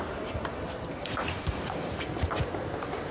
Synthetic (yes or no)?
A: no